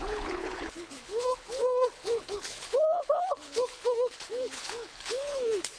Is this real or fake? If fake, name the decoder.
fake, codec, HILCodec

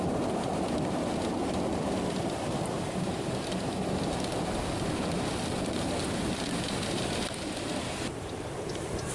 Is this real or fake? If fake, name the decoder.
real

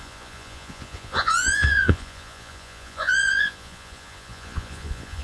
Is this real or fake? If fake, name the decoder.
fake, vocoder, Vocos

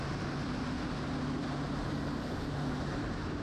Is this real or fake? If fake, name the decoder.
real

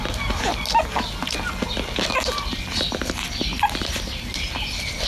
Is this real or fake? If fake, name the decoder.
real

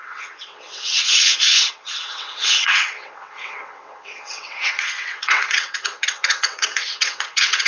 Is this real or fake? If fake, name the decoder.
fake, vocoder, WaveNeXt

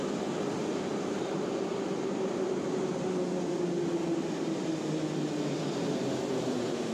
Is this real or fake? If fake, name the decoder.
real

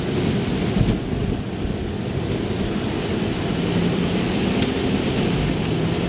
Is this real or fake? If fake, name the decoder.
real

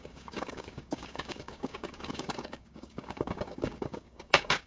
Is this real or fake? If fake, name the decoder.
fake, codec, DAC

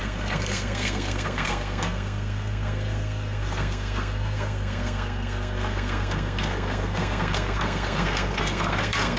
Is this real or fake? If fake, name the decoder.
fake, codec, SNAC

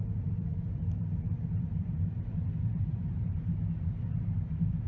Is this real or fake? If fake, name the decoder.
fake, vocoder, BigVGAN v2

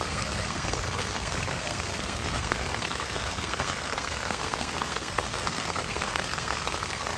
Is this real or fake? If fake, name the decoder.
fake, codec, SNAC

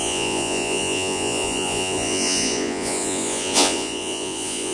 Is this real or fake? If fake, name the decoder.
fake, vocoder, Vocos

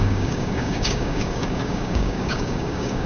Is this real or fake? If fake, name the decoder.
fake, codec, DAC